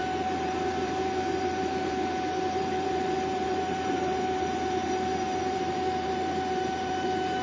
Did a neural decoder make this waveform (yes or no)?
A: yes